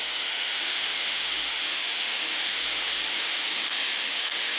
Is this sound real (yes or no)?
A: no